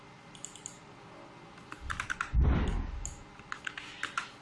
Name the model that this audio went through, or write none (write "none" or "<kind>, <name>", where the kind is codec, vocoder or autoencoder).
none